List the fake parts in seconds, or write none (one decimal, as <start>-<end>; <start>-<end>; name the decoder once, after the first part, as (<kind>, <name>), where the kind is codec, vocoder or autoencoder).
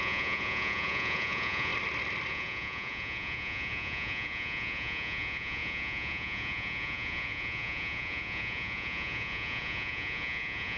0.0-1.7 (vocoder, Vocos); 2.3-10.8